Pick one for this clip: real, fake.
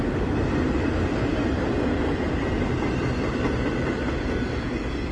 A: real